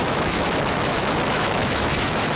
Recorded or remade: remade